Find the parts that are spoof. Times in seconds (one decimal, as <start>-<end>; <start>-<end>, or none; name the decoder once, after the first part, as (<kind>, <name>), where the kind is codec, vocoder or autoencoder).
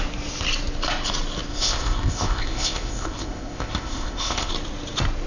1.5-4.5 (codec, ZipCodec)